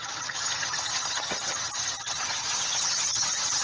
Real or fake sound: fake